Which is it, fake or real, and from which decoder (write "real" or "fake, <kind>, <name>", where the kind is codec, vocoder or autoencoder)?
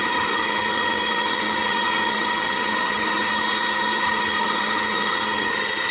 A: fake, vocoder, HiFi-GAN